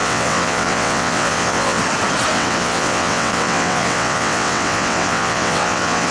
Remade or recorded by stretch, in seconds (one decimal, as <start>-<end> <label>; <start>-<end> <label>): 0.0-1.8 remade; 1.8-2.3 recorded; 2.3-6.1 remade